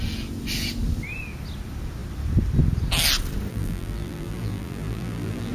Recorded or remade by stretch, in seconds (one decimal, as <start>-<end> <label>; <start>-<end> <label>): 0.0-3.5 recorded; 3.5-5.5 remade